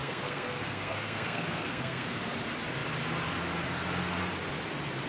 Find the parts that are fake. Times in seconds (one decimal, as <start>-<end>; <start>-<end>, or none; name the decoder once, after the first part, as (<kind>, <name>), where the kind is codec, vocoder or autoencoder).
0.0-2.2 (codec, SNAC)